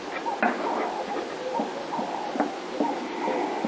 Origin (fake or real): real